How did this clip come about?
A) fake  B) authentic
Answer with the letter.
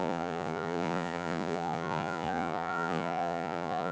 A